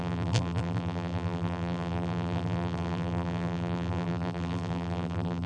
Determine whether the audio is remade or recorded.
remade